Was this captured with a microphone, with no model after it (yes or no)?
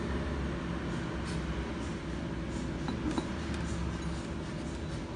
yes